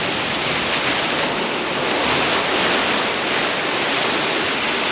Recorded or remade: recorded